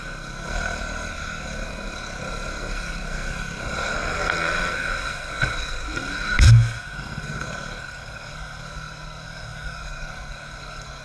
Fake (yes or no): yes